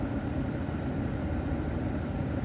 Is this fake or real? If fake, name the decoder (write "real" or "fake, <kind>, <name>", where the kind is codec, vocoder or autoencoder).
real